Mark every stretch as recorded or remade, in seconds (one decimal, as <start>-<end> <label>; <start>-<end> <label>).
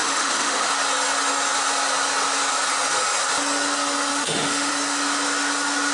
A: 0.0-0.7 remade; 0.7-4.1 recorded; 4.1-4.7 remade; 4.7-5.9 recorded